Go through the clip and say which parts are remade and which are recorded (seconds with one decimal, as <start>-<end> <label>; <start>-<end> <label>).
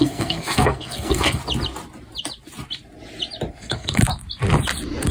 0.0-1.4 remade; 1.4-3.5 recorded; 3.5-4.0 remade; 4.0-5.1 recorded